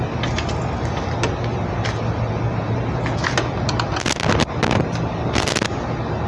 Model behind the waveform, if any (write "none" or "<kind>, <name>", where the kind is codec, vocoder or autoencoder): none